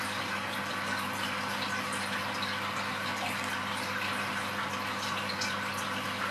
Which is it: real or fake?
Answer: real